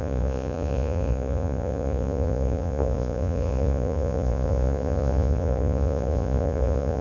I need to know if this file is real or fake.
fake